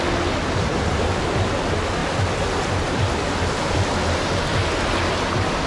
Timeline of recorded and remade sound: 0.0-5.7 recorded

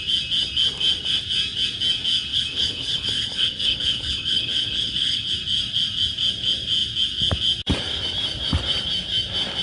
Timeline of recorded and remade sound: 0.0-2.3 recorded; 2.3-5.3 remade; 5.3-9.6 recorded